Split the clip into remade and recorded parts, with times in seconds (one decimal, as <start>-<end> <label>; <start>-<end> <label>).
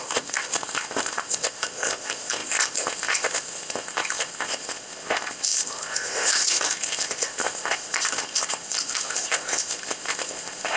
0.0-10.8 remade